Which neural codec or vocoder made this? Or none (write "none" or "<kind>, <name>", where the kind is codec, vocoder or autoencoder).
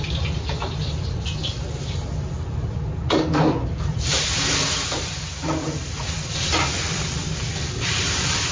vocoder, BigVGAN v2